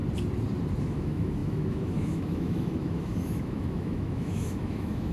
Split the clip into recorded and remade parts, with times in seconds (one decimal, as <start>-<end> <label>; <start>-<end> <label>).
0.0-0.8 recorded; 0.8-5.1 remade

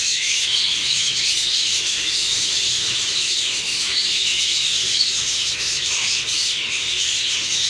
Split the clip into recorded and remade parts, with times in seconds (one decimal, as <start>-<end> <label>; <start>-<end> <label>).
0.0-7.7 remade